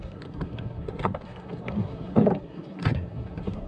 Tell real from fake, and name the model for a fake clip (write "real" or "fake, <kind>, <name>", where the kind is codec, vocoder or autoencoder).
fake, codec, SNAC